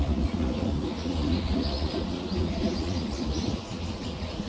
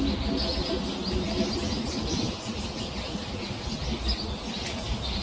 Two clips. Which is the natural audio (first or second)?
second